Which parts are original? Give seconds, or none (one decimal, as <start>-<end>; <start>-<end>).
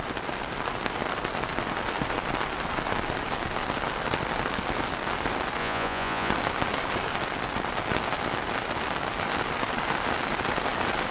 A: 0.0-5.6; 6.3-11.1